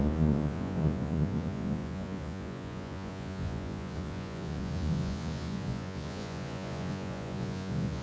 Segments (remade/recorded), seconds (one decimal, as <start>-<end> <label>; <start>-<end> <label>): 0.0-8.0 remade